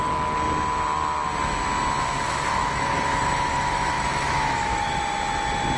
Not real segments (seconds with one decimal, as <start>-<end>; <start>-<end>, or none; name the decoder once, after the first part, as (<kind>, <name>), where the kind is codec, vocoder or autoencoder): 2.5-5.0 (autoencoder, DAC-VAE)

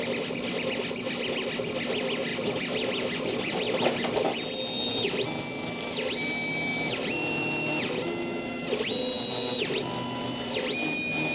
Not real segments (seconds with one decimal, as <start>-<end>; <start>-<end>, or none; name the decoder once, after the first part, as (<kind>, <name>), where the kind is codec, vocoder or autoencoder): none